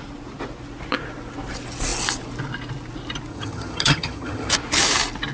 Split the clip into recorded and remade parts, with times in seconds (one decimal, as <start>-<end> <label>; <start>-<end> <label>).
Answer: 0.0-3.3 recorded; 3.3-4.5 remade; 4.5-5.3 recorded